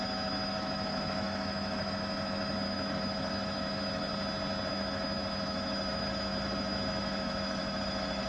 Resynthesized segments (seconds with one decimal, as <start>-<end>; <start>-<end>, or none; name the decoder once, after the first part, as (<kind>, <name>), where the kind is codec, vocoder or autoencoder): 0.0-4.1 (autoencoder, DAC-VAE); 4.7-8.3

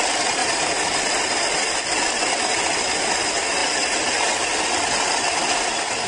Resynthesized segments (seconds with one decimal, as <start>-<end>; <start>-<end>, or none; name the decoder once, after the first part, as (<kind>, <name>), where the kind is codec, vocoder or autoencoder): 0.4-1.0 (vocoder, BigVGAN v2); 3.6-4.3